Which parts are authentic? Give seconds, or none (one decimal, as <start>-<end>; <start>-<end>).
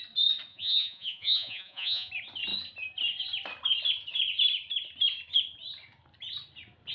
0.0-0.5; 2.1-6.9